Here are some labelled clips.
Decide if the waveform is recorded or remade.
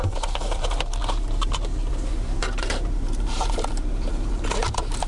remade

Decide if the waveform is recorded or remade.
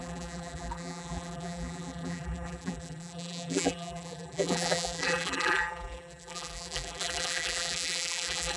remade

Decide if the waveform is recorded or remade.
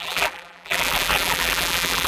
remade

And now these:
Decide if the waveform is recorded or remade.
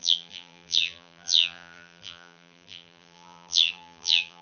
remade